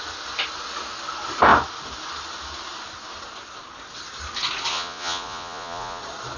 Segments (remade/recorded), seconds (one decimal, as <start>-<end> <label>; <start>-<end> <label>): 0.0-4.7 recorded; 4.7-6.0 remade; 6.0-6.4 recorded